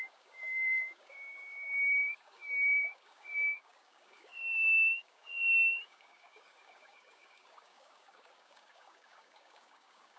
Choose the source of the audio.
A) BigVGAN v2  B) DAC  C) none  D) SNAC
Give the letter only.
B